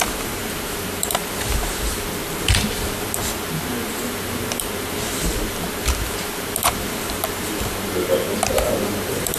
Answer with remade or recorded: remade